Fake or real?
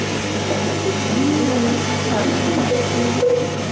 real